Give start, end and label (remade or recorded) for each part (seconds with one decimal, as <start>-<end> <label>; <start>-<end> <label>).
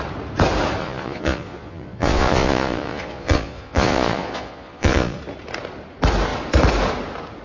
0.0-0.8 recorded; 0.8-5.2 remade; 5.2-7.4 recorded